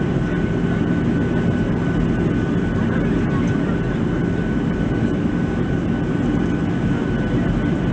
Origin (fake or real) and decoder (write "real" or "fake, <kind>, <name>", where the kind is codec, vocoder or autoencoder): real